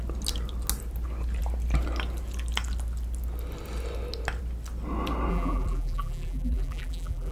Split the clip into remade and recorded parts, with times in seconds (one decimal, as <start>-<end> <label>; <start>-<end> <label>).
0.0-5.3 recorded; 5.3-7.3 remade